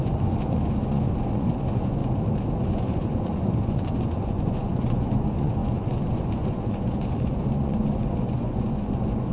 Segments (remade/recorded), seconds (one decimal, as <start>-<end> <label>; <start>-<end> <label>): 0.0-2.0 remade; 2.0-2.6 recorded; 2.6-9.3 remade